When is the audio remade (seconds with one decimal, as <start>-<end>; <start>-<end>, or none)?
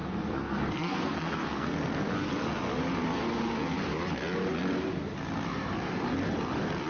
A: 0.0-2.1